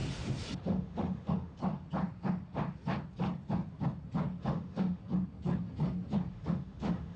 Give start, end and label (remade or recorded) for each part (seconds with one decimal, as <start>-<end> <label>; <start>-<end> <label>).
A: 0.0-0.6 recorded; 0.6-1.6 remade; 1.6-4.4 recorded; 4.4-5.0 remade; 5.0-6.3 recorded; 6.3-7.2 remade